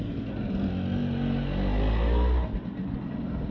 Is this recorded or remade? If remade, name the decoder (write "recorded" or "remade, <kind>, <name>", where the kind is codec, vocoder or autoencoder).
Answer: recorded